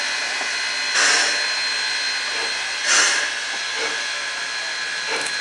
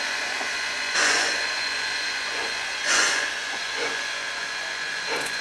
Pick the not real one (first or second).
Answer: second